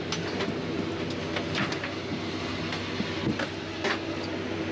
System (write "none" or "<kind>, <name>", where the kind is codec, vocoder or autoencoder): none